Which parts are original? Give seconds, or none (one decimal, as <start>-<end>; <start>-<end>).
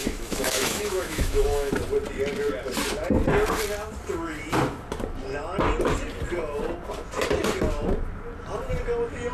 1.7-9.3